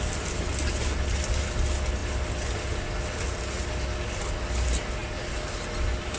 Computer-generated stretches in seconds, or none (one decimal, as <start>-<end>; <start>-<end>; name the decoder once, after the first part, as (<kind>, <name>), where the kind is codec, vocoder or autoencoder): none